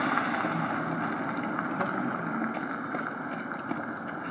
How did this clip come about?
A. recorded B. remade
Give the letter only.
A